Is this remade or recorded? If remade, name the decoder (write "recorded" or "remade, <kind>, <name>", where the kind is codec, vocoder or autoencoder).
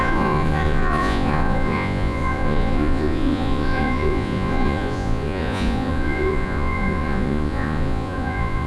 remade, vocoder, Vocos